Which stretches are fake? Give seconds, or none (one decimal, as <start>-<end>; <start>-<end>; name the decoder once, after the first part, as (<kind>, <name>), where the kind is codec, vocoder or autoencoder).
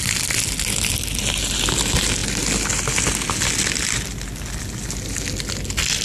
none